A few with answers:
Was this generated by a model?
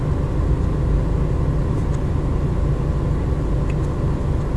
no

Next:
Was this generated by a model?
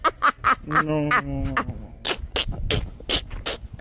no